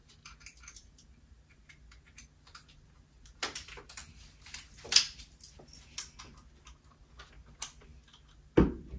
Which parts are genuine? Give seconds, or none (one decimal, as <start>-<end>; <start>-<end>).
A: 0.0-9.0

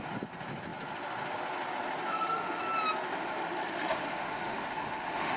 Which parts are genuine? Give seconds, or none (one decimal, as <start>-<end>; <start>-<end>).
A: 0.0-2.1; 2.6-3.1

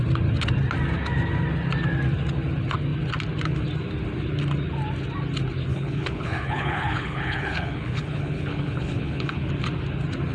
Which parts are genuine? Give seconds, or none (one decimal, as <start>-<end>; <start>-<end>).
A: 0.0-5.7; 9.5-10.3

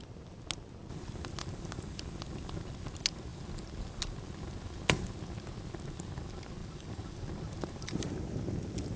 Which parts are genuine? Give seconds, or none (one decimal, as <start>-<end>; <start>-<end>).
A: 0.0-1.4; 2.0-6.6; 8.4-9.0

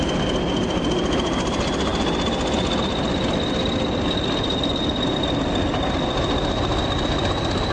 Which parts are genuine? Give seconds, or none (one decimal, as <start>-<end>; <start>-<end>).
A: 0.0-7.7

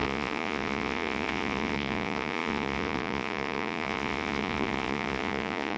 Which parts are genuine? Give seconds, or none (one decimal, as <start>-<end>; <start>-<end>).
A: none

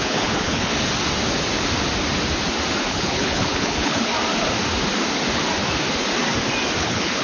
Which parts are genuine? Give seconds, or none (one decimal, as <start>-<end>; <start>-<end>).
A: 0.7-2.9; 4.1-6.8